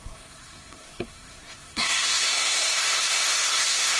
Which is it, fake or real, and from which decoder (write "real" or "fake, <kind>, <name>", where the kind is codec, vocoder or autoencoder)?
fake, codec, SNAC